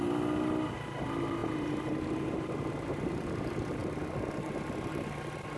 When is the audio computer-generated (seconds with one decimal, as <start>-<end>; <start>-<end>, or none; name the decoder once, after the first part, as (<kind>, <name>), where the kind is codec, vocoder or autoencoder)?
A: none